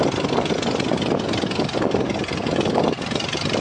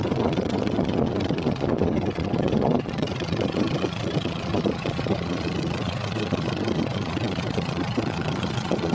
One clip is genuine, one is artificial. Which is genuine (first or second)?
first